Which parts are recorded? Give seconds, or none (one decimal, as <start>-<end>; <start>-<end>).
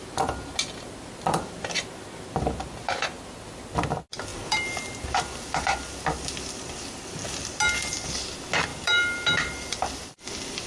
0.0-8.7